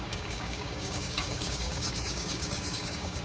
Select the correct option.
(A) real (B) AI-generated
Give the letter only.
B